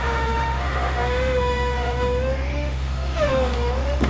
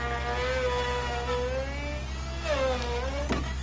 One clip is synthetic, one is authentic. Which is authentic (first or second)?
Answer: second